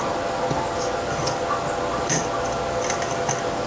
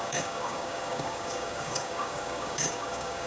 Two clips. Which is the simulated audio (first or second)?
second